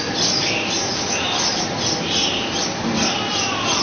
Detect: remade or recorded recorded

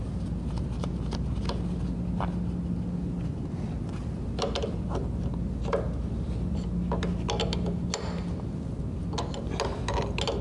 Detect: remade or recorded recorded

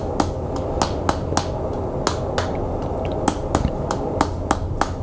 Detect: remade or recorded recorded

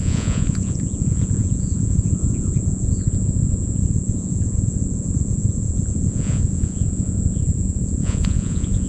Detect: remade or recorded remade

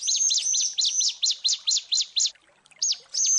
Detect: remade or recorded recorded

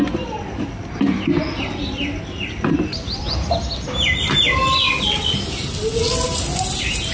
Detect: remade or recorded recorded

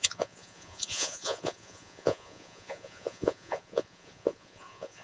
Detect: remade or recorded remade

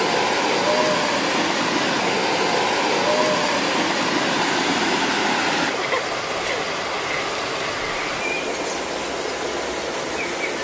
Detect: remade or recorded recorded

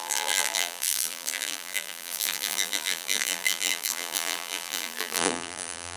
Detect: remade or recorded remade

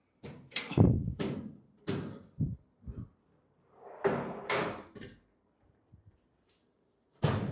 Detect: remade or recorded remade